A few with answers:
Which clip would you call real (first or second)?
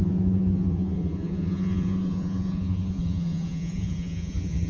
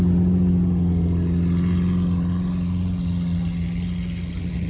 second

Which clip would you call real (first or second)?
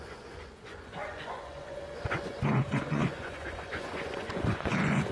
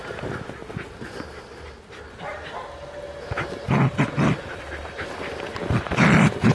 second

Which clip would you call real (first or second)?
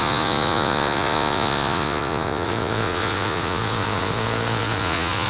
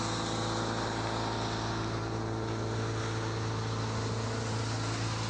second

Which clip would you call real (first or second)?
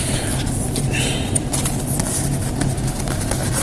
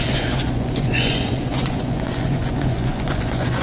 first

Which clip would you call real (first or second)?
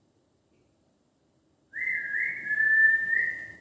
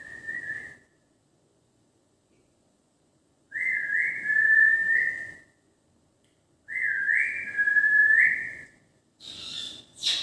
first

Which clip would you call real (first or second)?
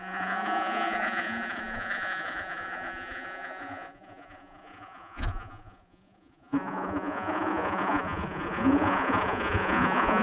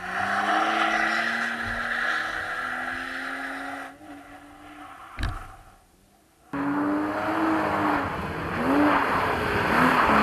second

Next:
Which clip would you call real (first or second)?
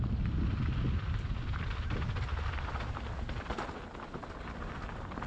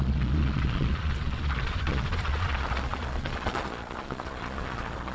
first